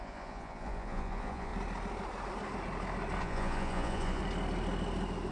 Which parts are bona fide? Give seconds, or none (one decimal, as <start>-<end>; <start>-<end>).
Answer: 1.5-3.2; 4.2-5.3